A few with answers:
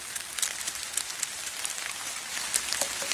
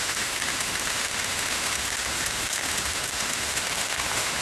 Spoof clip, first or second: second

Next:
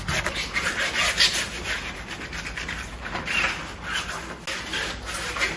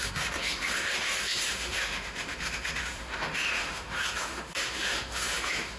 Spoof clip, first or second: second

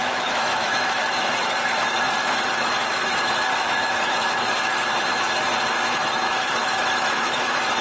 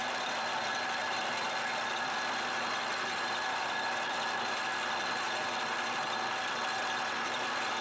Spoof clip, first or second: first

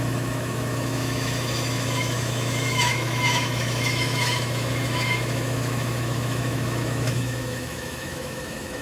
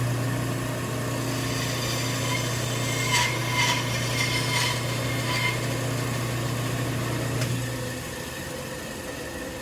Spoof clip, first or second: first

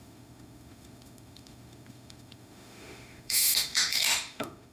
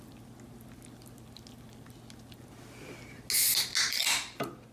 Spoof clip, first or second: first